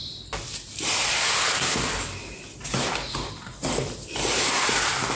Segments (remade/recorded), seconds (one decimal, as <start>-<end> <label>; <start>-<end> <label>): 0.0-5.2 recorded